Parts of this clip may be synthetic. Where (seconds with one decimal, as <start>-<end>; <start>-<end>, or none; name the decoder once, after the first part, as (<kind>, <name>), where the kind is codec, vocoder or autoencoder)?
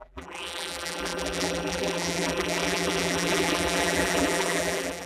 0.0-5.1 (vocoder, BigVGAN v2)